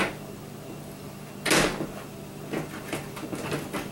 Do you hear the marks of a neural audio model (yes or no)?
no